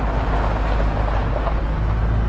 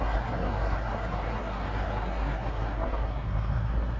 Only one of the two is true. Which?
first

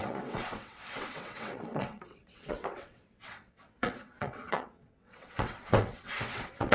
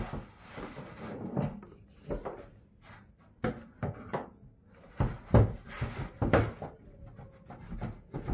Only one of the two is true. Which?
second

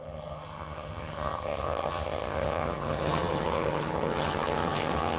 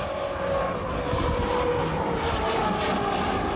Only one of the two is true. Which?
second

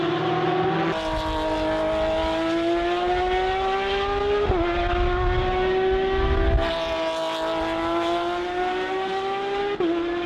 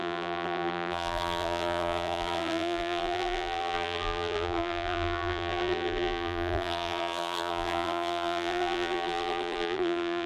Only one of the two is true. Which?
first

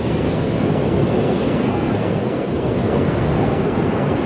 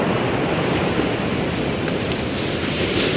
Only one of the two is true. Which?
second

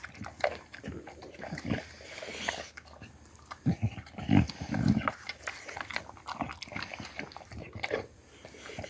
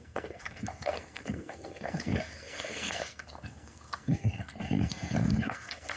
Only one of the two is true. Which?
first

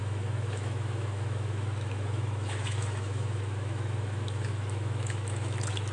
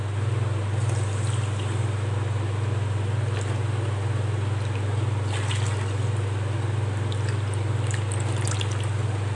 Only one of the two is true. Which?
second